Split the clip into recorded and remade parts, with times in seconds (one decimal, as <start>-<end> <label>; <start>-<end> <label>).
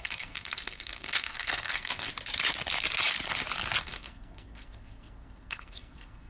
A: 0.0-2.1 remade; 2.1-3.8 recorded; 3.8-6.3 remade